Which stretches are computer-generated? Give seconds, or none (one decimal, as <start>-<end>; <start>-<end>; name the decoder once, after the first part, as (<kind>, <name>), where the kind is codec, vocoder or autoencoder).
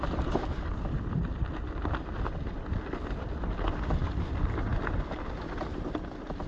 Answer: none